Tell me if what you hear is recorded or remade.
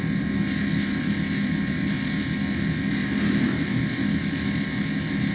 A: recorded